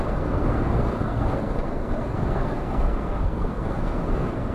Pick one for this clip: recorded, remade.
remade